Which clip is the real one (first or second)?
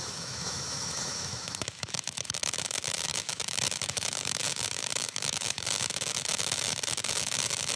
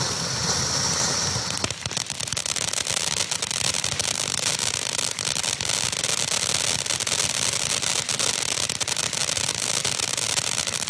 second